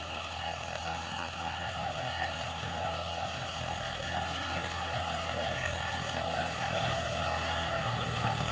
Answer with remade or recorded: remade